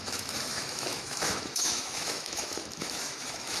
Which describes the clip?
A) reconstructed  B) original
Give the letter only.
A